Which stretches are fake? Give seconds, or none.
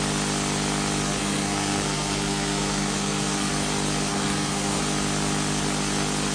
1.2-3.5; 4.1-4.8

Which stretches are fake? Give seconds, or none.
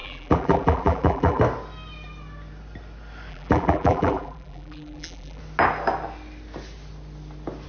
0.0-1.4; 3.3-5.4